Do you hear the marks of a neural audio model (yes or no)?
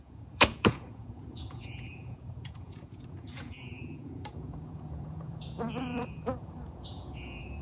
yes